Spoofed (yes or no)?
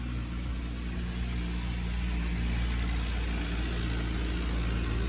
no